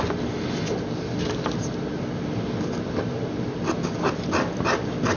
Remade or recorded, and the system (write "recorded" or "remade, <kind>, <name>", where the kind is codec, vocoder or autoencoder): recorded